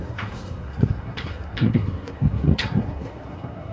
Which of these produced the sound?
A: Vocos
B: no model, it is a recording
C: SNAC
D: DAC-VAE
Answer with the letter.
C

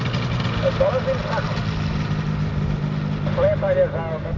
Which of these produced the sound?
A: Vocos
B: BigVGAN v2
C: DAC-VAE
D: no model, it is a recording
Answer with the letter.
D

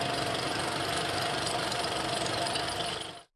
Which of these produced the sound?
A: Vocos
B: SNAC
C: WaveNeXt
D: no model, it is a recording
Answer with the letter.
D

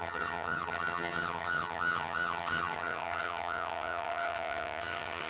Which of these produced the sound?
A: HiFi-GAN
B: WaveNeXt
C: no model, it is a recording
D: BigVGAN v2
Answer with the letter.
A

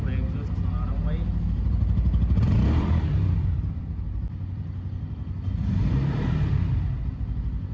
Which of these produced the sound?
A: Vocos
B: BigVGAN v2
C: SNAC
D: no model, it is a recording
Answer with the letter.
D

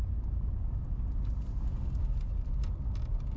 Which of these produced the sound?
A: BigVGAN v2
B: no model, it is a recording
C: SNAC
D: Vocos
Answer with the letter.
B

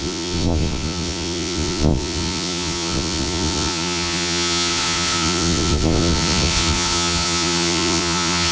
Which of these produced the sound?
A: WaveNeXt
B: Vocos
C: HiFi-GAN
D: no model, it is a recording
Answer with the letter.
B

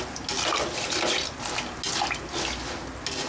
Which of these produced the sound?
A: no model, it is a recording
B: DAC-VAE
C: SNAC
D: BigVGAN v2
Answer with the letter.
A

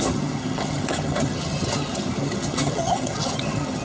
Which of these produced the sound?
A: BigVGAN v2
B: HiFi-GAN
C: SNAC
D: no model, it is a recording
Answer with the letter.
B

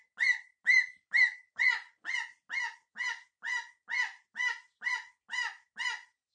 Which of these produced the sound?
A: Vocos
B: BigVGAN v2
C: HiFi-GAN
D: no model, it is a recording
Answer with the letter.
D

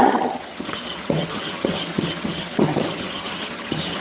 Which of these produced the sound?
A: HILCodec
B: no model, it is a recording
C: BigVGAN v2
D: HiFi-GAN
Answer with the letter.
D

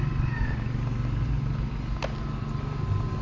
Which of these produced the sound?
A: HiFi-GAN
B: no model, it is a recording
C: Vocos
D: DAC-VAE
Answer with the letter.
B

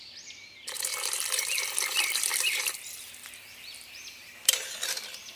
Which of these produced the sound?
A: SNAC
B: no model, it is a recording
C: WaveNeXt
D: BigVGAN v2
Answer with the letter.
D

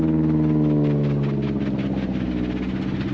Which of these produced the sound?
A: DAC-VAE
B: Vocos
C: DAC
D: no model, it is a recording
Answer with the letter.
D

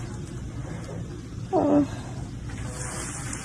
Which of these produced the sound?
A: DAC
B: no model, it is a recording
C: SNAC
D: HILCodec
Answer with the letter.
B